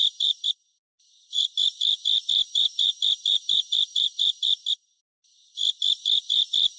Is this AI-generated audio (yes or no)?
yes